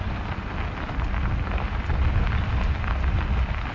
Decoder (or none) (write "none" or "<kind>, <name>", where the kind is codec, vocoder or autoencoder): none